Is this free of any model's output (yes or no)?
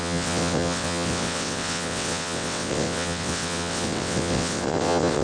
no